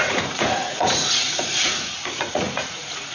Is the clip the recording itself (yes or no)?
no